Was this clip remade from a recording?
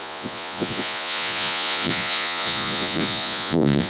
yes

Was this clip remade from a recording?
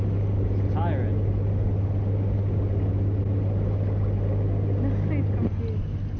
no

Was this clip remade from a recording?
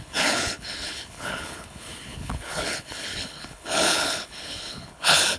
yes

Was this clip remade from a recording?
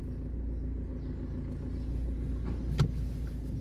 no